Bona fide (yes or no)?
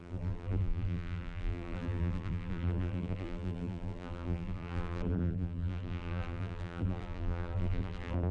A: no